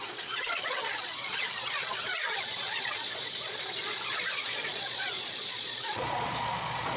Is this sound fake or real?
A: fake